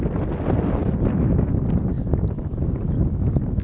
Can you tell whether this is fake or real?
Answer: real